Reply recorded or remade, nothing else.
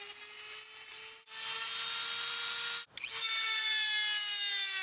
recorded